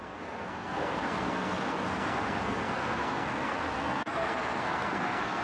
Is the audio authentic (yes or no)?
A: no